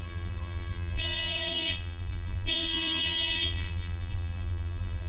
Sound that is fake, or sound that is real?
fake